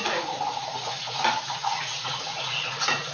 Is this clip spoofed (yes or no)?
yes